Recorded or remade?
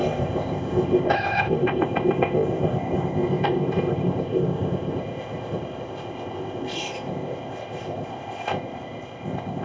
remade